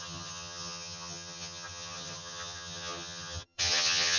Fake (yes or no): yes